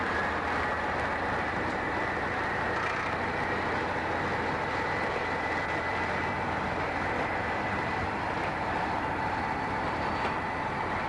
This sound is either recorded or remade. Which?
recorded